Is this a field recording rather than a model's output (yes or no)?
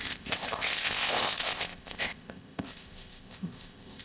no